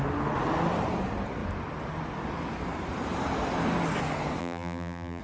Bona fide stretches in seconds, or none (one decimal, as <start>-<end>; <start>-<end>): 0.0-4.4